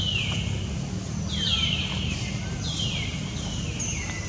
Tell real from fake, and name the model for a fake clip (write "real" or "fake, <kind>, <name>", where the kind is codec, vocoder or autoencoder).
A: fake, vocoder, BigVGAN v2